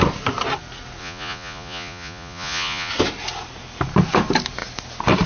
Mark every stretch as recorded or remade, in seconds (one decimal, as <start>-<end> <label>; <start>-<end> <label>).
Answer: 0.0-1.0 recorded; 1.0-2.9 remade; 2.9-5.3 recorded